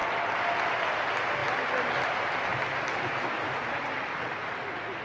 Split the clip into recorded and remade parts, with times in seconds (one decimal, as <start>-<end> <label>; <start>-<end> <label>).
0.0-5.0 recorded